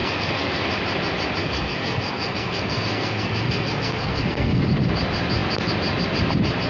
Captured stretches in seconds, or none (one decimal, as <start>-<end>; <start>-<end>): 0.7-1.4; 4.6-6.7